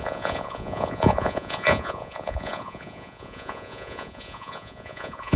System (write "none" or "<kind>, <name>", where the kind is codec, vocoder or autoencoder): vocoder, Vocos